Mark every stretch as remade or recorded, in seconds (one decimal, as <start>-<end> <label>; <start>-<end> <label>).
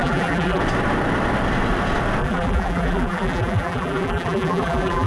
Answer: 0.0-0.6 remade; 0.6-2.2 recorded; 2.2-5.1 remade